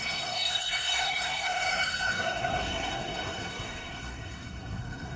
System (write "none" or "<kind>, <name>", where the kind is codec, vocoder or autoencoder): codec, SNAC